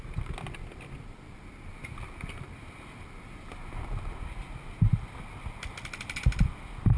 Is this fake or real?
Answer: real